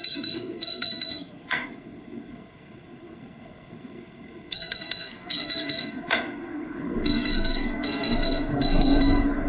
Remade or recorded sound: remade